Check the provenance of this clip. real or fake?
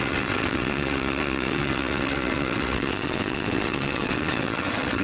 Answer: fake